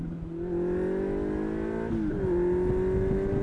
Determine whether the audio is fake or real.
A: real